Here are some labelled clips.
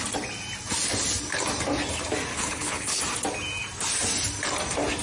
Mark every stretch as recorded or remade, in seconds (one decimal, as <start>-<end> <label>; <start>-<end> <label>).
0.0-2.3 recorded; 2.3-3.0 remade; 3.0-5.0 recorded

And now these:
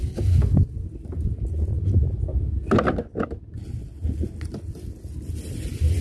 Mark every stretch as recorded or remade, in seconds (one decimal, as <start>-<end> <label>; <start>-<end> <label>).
0.0-6.0 recorded

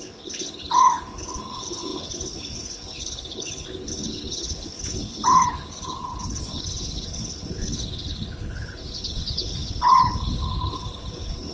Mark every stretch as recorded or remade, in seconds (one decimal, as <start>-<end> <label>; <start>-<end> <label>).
0.0-11.5 remade

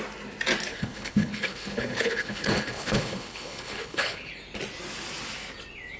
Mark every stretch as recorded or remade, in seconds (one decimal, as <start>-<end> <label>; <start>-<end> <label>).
0.0-0.7 recorded; 0.7-4.3 remade; 4.3-6.0 recorded

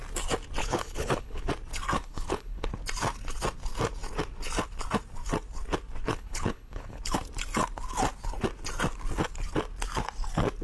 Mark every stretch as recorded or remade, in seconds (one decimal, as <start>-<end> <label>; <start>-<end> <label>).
0.0-0.6 recorded; 0.6-1.5 remade; 1.5-2.0 recorded; 2.0-2.7 remade; 2.7-6.1 recorded; 6.1-7.0 remade; 7.0-10.6 recorded

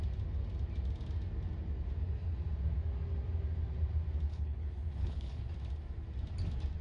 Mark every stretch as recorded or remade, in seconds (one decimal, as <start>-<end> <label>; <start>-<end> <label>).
0.0-4.3 recorded; 4.3-5.4 remade; 5.4-6.8 recorded